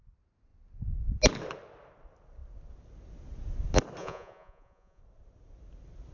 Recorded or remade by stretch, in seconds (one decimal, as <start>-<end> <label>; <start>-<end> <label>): 0.0-4.0 recorded; 4.0-5.0 remade; 5.0-6.1 recorded